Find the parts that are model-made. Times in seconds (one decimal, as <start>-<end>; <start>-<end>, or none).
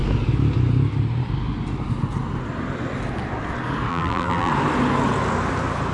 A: 3.9-4.5